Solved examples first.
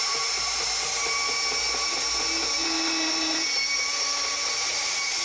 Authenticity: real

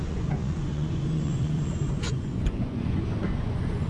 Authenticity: fake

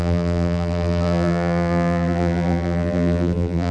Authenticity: fake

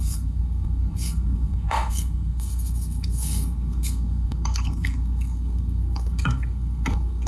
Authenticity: fake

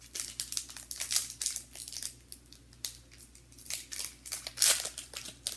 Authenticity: real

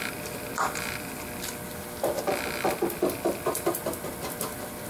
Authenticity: real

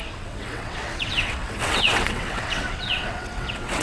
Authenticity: fake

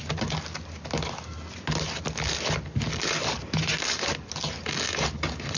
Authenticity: real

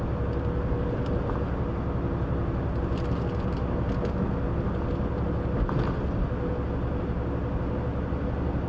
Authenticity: real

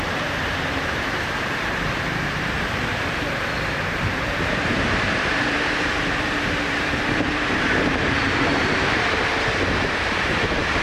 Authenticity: fake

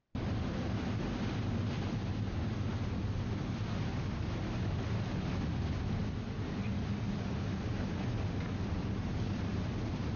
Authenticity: real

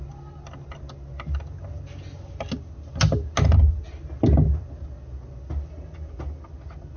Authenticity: real